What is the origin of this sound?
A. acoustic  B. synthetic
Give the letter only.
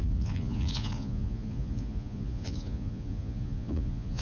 B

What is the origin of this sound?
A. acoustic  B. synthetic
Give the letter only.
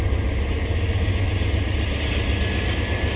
A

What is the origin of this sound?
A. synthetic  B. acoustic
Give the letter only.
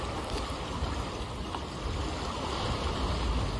B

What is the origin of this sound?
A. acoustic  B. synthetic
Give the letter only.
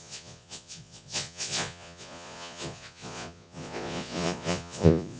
B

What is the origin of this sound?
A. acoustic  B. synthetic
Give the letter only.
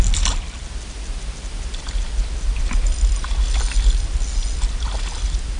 A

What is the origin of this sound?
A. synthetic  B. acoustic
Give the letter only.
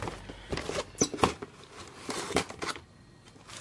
B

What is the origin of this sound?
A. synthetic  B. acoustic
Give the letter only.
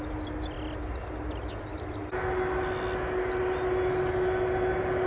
B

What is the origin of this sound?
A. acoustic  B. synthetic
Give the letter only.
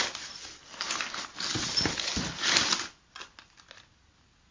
A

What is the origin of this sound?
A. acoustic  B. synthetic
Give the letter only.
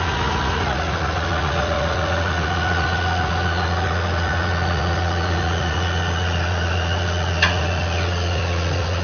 B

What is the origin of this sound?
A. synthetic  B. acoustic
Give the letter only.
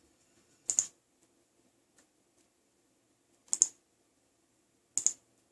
B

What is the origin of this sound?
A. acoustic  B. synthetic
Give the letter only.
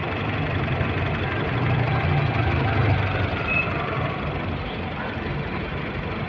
A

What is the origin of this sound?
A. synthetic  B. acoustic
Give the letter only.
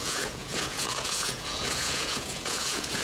A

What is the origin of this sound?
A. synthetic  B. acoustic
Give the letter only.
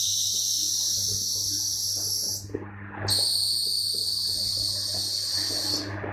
B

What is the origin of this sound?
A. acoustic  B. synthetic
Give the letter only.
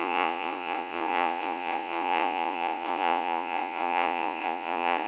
B